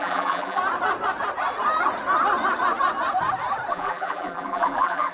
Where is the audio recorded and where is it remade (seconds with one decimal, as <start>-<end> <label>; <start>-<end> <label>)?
0.0-0.6 remade; 0.6-3.7 recorded; 3.7-5.1 remade